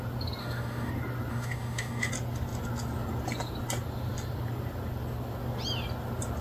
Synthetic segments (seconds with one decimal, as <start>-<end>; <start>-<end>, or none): 0.4-0.9; 1.3-2.1